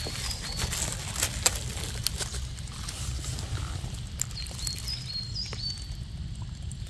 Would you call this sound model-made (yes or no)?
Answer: no